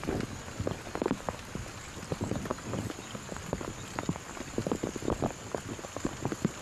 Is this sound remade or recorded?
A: recorded